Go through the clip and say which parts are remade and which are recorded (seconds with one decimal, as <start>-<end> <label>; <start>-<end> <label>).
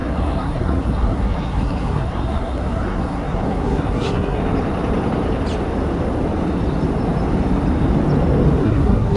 0.0-4.4 remade; 4.4-8.6 recorded; 8.6-9.2 remade